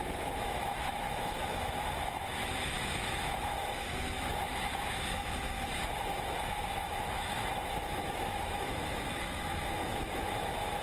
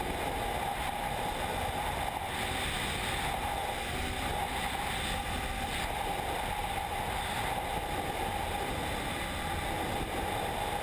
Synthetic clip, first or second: first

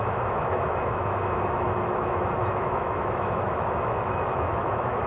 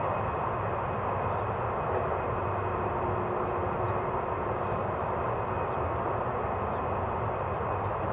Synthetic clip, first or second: first